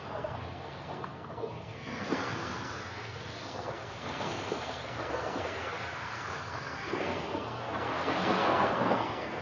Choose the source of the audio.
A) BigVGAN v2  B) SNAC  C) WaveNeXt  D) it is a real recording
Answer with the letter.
B